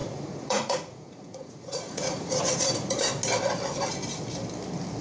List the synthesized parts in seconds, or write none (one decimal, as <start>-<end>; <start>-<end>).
0.0-3.0